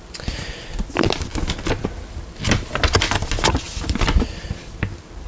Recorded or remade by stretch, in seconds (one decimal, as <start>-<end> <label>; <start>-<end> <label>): 0.0-5.3 recorded